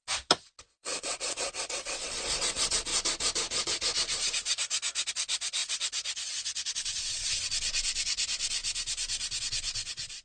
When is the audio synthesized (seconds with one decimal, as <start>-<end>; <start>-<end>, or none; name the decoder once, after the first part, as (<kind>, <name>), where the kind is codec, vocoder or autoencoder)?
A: 0.6-2.9 (vocoder, WaveNeXt); 5.1-8.6; 9.4-10.2

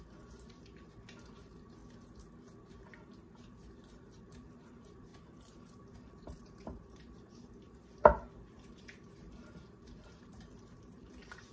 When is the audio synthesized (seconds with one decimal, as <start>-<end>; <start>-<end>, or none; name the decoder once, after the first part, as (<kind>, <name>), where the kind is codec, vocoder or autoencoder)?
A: 0.0-1.8 (vocoder, BigVGAN v2); 2.6-5.1; 6.0-11.5

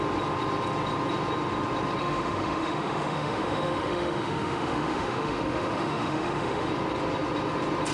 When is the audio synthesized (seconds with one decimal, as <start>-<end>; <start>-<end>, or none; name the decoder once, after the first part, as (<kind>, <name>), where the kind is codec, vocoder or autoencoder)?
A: 2.0-6.7 (autoencoder, DAC-VAE)

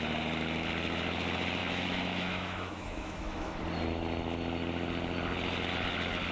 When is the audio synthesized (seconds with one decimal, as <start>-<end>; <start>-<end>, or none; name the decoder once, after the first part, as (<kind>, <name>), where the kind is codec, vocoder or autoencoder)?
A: 1.6-3.6 (autoencoder, DAC-VAE)

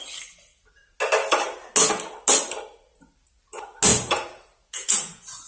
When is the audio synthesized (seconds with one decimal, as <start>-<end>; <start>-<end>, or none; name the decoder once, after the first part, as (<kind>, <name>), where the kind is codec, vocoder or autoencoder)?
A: 3.9-5.5 (vocoder, Vocos)